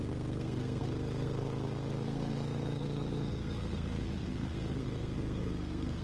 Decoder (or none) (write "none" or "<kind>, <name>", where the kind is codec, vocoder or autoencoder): codec, SNAC